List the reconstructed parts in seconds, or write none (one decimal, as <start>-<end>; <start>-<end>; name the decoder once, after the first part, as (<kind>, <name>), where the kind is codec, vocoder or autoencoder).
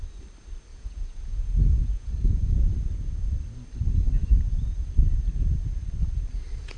0.7-2.1 (vocoder, Vocos)